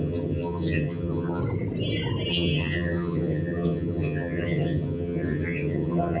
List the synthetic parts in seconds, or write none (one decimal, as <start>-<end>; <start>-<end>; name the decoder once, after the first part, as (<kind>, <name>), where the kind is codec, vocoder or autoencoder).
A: 0.0-1.4 (vocoder, HiFi-GAN); 2.3-6.2